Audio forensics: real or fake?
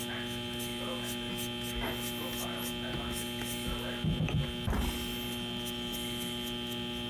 real